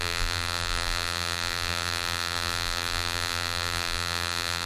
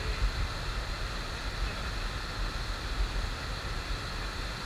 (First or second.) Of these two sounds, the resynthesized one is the first